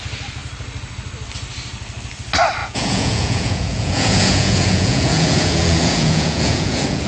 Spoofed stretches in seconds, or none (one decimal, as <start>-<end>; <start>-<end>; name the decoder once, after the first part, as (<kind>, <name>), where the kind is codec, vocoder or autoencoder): 2.6-7.1 (vocoder, Vocos)